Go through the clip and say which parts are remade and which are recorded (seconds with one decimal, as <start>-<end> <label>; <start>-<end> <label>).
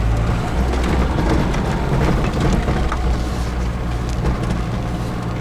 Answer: 0.0-5.4 recorded